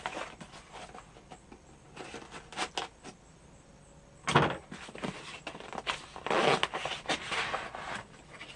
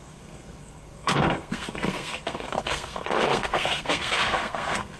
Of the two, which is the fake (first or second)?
second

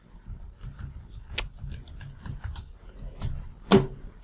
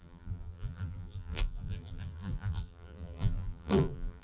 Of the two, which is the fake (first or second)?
second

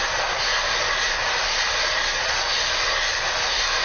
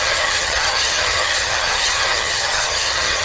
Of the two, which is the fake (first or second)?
second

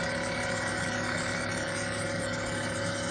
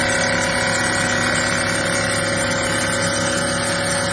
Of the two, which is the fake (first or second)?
first